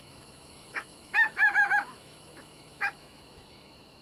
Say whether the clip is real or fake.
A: fake